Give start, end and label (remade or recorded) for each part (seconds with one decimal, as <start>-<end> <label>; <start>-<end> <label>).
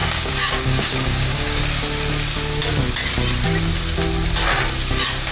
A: 0.0-1.6 remade; 1.6-5.3 recorded